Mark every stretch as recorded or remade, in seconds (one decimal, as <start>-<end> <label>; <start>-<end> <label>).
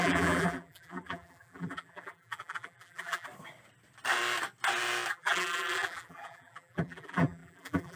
0.0-3.3 remade; 3.3-5.1 recorded; 5.1-8.0 remade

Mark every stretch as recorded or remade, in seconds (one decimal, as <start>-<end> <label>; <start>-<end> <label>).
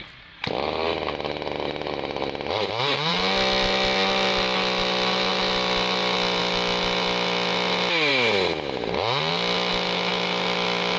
0.0-11.0 recorded